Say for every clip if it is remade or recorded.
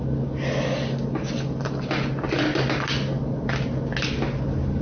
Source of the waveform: recorded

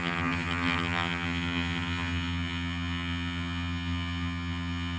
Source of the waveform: remade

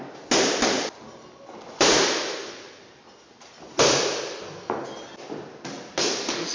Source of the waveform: recorded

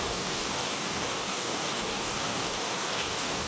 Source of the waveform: remade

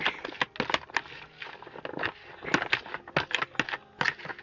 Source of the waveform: recorded